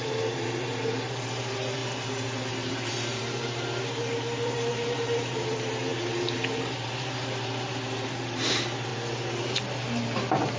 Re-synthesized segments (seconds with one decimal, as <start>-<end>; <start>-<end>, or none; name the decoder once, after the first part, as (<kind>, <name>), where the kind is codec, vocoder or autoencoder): 0.0-10.6 (vocoder, BigVGAN v2)